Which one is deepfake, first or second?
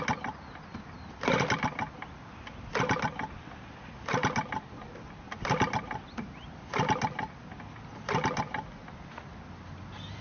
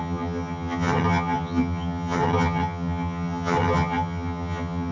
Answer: second